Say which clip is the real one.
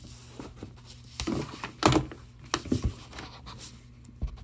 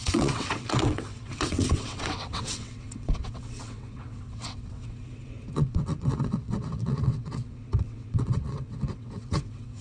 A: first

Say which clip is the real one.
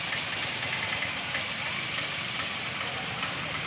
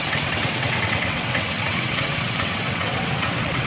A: first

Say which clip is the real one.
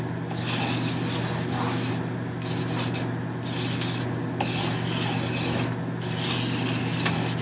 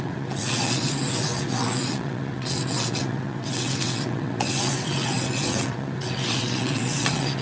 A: first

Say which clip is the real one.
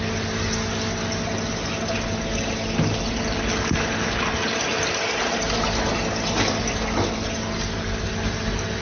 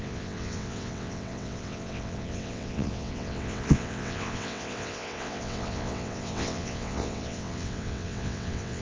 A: first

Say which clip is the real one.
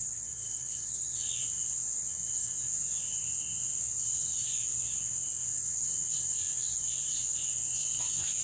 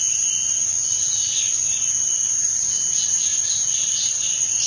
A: second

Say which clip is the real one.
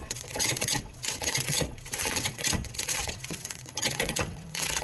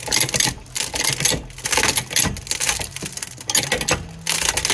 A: second